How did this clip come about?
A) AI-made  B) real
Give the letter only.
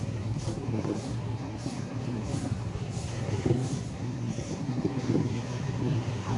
A